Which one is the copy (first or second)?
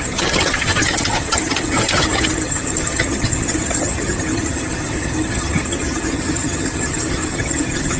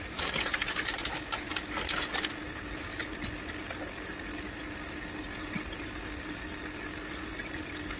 first